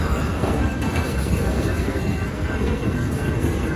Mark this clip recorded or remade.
remade